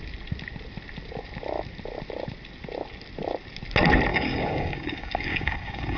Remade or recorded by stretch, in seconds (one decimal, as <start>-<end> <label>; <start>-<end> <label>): 0.0-4.1 recorded; 4.1-6.0 remade